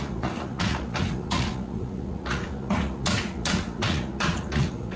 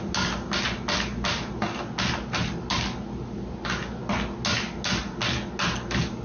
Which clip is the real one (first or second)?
second